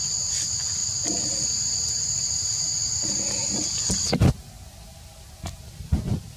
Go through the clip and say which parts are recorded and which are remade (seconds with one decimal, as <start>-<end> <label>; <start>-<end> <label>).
0.0-6.4 recorded